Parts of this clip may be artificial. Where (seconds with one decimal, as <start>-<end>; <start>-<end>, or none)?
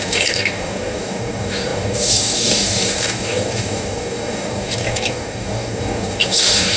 0.0-6.8